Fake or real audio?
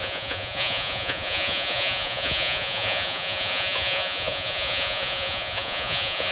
fake